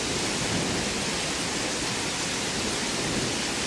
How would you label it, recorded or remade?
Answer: recorded